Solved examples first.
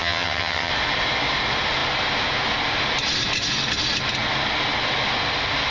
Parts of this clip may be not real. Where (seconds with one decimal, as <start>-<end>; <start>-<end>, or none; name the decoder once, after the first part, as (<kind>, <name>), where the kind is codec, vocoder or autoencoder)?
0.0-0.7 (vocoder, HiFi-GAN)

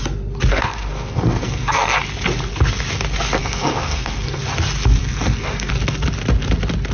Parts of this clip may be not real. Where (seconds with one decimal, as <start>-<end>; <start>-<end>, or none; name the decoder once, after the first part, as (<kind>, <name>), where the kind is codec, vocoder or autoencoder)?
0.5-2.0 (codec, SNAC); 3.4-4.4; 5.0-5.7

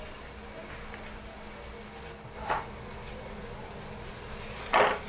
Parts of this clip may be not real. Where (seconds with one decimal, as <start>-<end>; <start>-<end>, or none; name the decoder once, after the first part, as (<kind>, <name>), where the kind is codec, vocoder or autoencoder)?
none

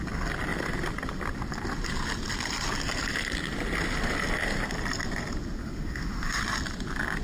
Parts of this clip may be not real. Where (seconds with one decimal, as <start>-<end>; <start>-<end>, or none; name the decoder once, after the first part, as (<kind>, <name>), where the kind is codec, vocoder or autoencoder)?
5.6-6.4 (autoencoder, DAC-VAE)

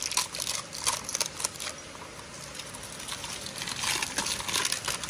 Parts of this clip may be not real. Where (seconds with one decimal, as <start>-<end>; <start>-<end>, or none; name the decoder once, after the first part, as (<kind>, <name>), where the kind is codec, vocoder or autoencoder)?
none